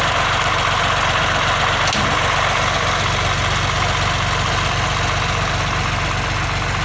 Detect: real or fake real